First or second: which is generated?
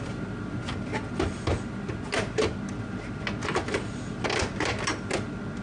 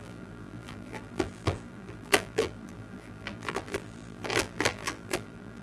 second